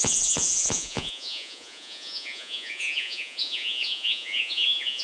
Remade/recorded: remade